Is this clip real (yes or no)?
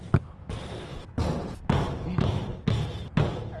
yes